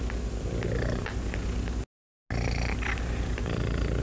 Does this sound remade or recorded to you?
recorded